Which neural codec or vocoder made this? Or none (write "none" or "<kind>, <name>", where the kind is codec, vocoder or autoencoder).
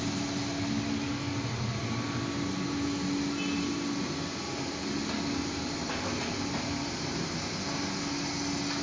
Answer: none